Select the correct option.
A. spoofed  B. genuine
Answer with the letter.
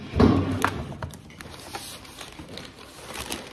B